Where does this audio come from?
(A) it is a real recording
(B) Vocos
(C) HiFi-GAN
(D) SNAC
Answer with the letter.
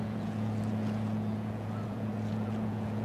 B